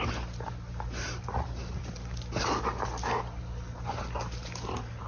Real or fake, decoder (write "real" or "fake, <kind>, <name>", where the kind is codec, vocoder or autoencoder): real